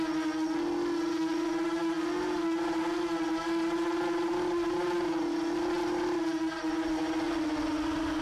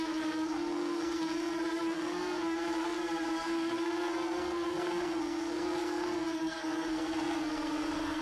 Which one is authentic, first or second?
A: first